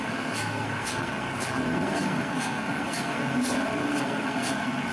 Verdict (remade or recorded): remade